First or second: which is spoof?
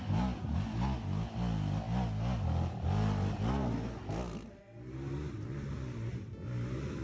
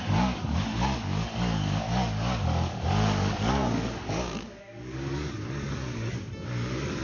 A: second